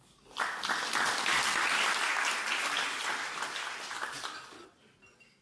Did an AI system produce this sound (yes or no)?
no